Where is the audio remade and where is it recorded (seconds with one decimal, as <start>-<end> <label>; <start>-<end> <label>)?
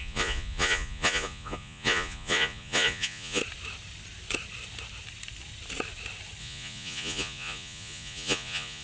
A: 0.0-3.4 remade; 3.4-6.4 recorded; 6.4-8.8 remade